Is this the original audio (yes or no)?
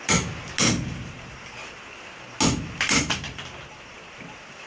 yes